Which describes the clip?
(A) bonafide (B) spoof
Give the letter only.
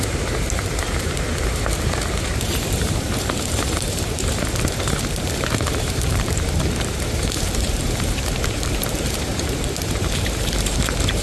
B